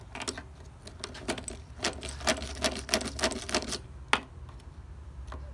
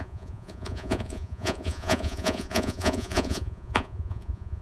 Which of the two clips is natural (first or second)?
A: first